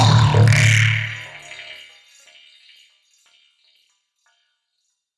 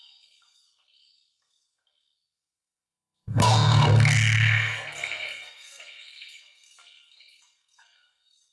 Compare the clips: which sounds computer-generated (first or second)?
second